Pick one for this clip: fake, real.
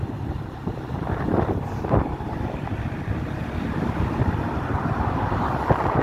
fake